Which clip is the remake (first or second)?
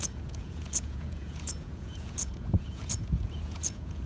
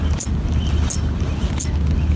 first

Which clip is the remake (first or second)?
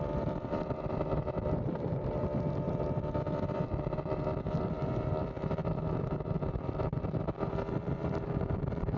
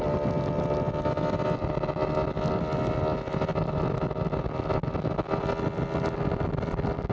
first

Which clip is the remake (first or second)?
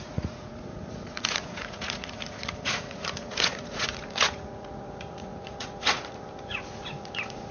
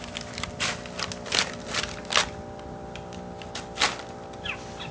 first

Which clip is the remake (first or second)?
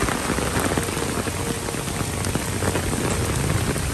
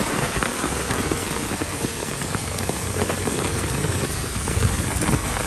second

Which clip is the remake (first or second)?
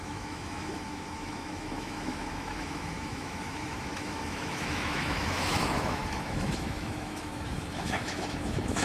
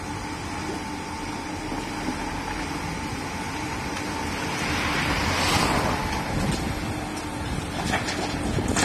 first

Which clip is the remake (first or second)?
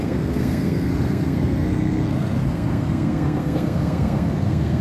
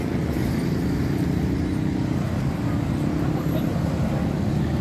first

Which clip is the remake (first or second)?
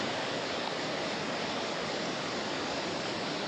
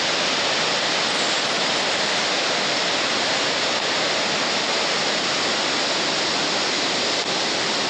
first